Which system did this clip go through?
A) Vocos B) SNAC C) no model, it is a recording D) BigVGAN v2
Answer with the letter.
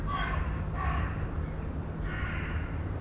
D